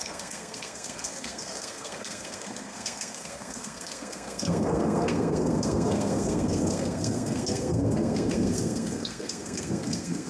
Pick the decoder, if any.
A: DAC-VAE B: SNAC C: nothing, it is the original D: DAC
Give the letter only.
B